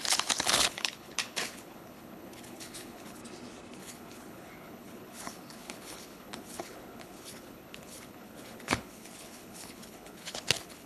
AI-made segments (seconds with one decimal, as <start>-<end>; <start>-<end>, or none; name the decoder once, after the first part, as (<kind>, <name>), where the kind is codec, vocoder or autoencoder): 0.0-3.2 (codec, HILCodec); 3.8-10.9